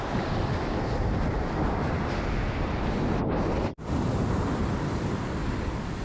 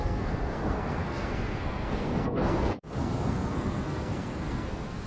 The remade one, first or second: second